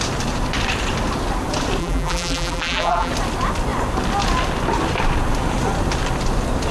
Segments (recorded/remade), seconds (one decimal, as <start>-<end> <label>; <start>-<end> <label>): 0.0-1.8 recorded; 1.8-3.1 remade; 3.1-6.7 recorded